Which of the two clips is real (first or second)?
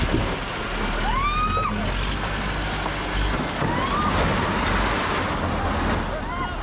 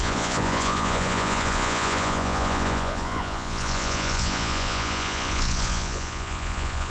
first